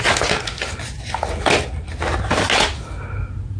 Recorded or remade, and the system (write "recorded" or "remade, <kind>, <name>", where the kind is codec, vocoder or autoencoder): recorded